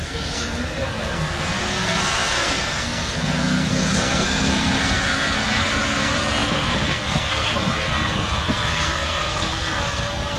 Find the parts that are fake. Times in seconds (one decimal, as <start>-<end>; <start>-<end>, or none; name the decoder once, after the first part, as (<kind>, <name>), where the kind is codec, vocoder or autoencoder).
0.0-10.4 (codec, SNAC)